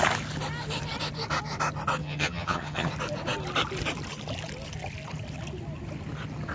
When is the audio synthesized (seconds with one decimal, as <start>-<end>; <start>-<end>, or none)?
2.0-2.9

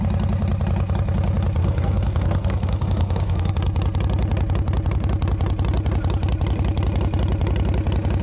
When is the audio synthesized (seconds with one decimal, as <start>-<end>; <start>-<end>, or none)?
1.6-3.5

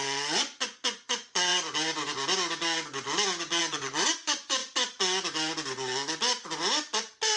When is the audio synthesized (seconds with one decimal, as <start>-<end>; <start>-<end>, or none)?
0.0-1.5; 3.6-4.6

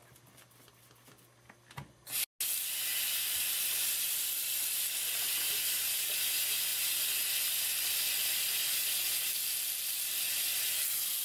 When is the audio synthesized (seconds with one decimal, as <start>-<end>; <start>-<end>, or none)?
none